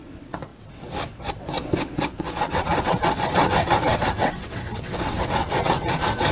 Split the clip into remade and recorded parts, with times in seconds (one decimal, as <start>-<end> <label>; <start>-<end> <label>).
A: 0.0-6.3 remade

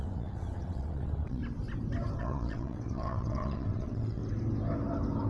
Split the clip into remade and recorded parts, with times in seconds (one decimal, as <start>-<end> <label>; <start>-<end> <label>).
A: 0.0-1.4 remade; 1.4-2.2 recorded; 2.2-4.2 remade; 4.2-5.3 recorded

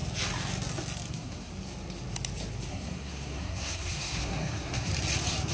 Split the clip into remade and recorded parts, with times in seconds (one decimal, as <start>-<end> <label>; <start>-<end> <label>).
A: 0.0-1.1 recorded; 1.1-1.5 remade; 1.5-2.7 recorded; 2.7-4.9 remade; 4.9-5.5 recorded

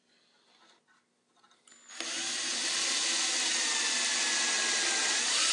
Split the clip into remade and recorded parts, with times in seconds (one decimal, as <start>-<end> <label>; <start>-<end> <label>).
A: 0.0-5.5 recorded

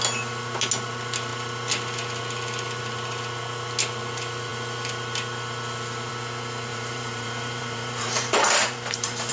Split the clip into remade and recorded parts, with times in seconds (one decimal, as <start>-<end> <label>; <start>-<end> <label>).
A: 0.0-6.7 recorded; 6.7-9.3 remade

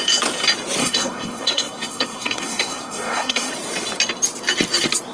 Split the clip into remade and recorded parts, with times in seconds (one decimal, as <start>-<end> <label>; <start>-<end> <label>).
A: 0.0-0.8 recorded; 0.8-3.5 remade; 3.5-5.1 recorded